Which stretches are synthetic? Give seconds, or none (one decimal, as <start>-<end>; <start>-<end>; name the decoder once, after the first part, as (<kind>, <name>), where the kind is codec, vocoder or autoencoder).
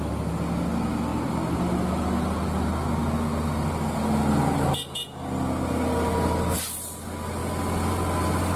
none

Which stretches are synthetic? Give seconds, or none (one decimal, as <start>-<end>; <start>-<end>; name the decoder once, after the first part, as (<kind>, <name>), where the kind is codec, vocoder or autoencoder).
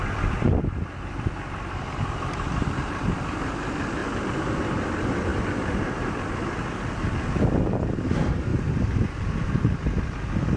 0.0-4.0 (vocoder, BigVGAN v2); 4.5-8.5; 9.0-10.6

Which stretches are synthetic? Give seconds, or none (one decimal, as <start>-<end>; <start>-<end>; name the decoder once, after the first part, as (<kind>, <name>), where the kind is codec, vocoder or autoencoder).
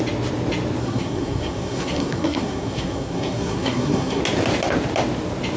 0.8-4.2 (codec, SNAC)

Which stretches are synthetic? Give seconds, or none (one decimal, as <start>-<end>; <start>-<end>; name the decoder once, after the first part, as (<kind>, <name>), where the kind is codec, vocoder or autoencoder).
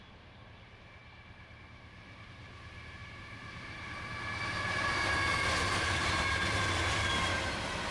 1.0-2.4 (vocoder, BigVGAN v2); 3.0-4.0; 6.0-7.1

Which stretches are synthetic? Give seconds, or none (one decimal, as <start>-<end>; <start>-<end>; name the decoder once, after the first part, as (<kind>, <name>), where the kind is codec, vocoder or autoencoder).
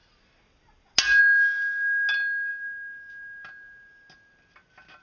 none